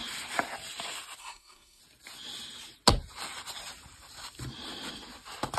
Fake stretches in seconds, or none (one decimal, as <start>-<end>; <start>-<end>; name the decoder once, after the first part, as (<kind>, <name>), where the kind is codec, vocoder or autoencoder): 1.2-1.8 (codec, SNAC)